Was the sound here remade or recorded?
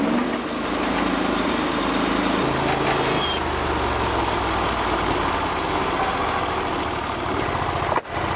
recorded